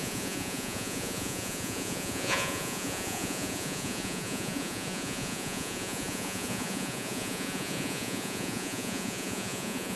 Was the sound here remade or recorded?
remade